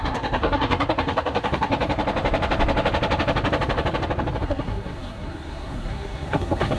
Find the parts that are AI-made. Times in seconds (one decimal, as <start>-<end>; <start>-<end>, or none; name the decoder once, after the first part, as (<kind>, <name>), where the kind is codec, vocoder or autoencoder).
0.0-1.7 (codec, SNAC); 4.4-6.8